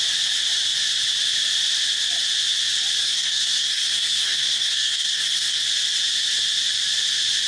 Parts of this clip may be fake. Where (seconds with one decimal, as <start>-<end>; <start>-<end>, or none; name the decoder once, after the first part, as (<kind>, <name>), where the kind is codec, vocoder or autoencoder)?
3.0-5.6 (codec, SNAC)